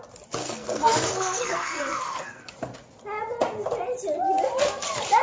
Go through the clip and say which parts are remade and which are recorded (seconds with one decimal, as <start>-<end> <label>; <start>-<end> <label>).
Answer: 0.0-0.4 recorded; 0.4-2.5 remade; 2.5-5.2 recorded